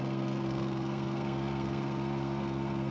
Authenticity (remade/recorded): remade